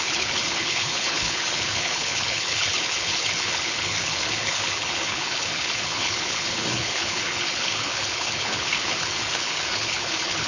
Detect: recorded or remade remade